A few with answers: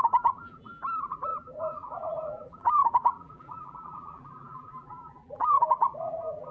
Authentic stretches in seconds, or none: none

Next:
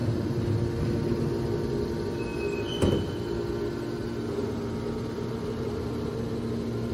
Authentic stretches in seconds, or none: 0.0-6.9

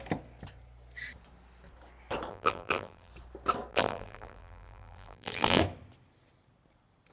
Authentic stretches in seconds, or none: 0.0-2.3; 3.1-3.7; 5.6-7.1

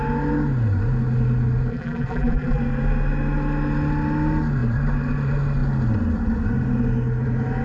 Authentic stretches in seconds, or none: 0.0-1.7; 2.6-7.6

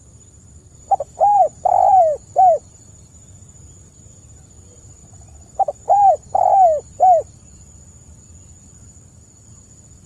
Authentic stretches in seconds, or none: 2.7-5.0; 6.5-10.1

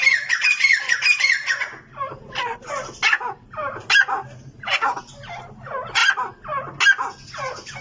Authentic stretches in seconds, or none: 0.0-0.7; 1.6-7.8

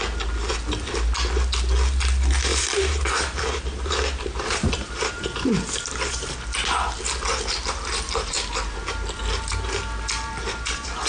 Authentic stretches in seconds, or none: 0.0-2.5; 6.3-11.1